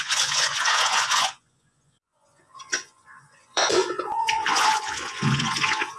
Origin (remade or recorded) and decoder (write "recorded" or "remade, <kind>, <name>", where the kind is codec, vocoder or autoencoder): remade, vocoder, Vocos